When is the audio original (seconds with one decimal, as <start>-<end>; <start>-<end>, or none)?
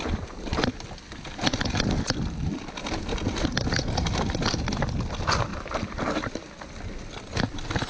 0.0-7.9